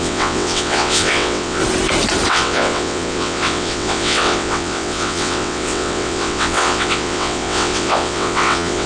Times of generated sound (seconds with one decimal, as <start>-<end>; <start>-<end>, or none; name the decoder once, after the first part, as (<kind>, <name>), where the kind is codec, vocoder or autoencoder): 0.0-1.6 (vocoder, WaveNeXt); 2.3-8.9

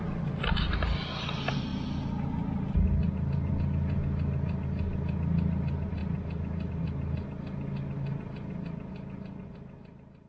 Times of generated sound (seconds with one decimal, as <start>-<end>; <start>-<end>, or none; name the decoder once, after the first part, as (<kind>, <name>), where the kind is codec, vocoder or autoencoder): none